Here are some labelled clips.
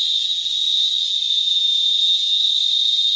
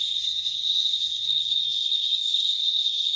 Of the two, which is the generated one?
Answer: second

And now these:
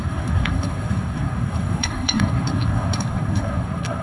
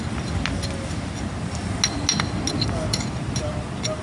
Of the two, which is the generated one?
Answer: first